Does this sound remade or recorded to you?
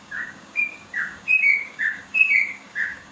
remade